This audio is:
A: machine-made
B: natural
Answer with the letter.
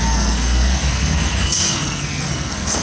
A